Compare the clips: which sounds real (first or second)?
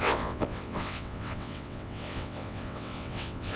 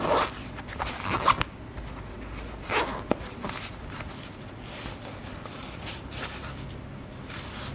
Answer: second